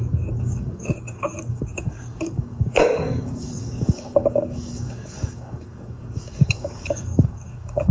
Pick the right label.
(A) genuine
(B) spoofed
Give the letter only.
B